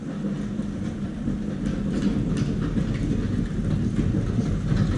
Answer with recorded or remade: recorded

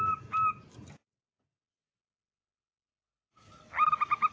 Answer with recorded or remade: recorded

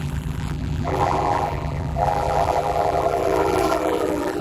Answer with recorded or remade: remade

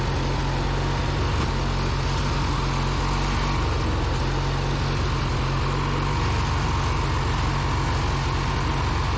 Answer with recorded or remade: recorded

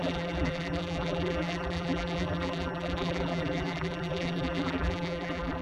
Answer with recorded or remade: remade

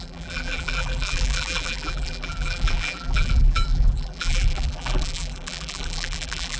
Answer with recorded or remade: remade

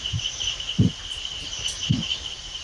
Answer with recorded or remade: remade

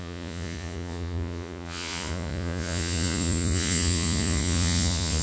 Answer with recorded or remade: remade